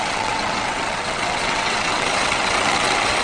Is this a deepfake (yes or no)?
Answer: yes